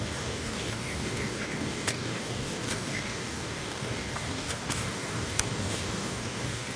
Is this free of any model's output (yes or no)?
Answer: no